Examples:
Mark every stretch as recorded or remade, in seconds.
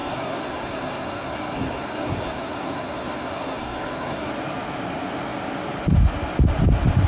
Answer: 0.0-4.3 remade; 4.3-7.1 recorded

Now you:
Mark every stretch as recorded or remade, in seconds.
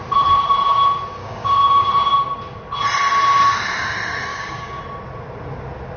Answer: 0.0-1.2 recorded; 1.2-1.9 remade; 1.9-4.3 recorded; 4.3-4.8 remade; 4.8-6.0 recorded